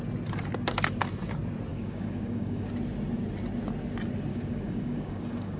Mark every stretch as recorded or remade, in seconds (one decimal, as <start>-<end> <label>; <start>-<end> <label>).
0.0-1.7 recorded; 1.7-2.7 remade; 2.7-4.3 recorded; 4.3-5.6 remade